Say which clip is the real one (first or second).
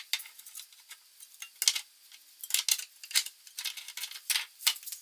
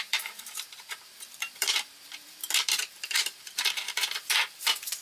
first